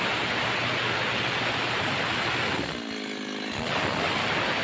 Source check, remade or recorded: recorded